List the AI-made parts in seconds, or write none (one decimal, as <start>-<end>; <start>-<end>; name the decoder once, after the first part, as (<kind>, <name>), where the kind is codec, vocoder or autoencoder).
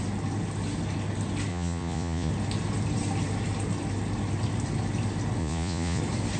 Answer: 1.5-2.3 (vocoder, Vocos); 5.4-6.0